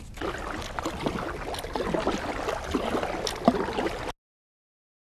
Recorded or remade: recorded